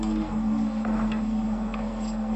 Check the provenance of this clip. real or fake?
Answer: fake